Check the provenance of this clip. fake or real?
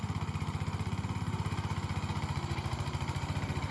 fake